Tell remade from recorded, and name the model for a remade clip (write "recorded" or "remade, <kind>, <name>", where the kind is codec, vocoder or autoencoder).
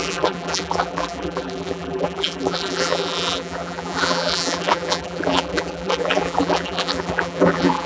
remade, vocoder, BigVGAN v2